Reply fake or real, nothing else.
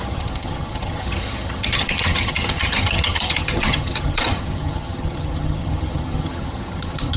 fake